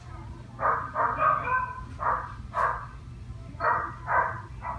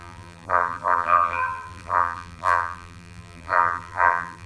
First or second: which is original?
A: first